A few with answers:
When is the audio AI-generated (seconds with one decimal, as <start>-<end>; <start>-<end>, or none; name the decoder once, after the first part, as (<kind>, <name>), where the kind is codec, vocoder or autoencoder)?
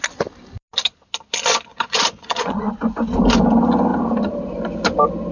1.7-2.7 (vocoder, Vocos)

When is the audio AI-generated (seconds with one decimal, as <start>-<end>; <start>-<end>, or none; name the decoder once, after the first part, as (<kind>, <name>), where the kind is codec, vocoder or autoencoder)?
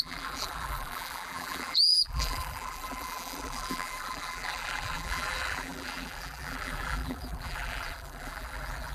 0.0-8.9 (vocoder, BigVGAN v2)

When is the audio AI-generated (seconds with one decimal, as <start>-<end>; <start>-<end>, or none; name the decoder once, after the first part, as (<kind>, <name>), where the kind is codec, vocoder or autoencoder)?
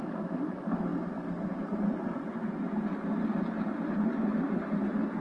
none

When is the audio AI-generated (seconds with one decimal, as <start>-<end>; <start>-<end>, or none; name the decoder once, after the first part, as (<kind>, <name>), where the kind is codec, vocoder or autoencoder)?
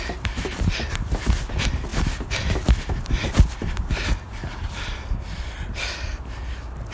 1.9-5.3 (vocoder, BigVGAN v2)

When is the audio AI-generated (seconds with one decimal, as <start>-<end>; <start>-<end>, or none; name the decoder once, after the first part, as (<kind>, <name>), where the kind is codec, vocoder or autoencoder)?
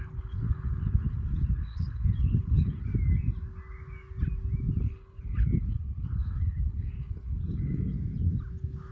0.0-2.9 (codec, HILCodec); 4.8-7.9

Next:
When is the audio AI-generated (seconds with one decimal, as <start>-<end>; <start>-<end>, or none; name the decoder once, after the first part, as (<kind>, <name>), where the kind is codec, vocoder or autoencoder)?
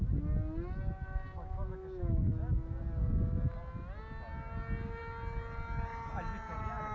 none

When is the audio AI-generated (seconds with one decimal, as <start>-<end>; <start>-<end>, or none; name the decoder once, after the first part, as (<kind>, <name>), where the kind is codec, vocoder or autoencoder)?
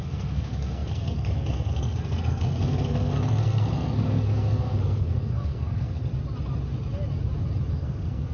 0.0-6.1 (codec, SNAC); 7.7-8.3